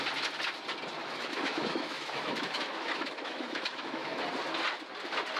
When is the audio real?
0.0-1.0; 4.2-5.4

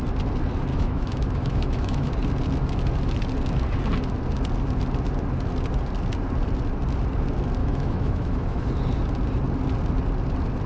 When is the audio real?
0.0-0.7; 2.1-7.6; 8.7-10.7

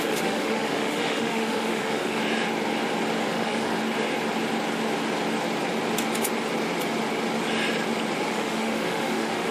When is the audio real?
2.2-3.2; 3.8-8.3